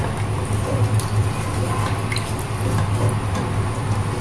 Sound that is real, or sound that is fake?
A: real